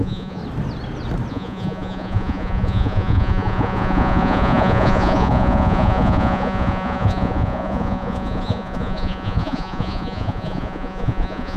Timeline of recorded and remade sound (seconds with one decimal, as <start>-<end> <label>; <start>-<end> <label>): 0.0-0.4 remade; 0.4-1.3 recorded; 1.3-11.6 remade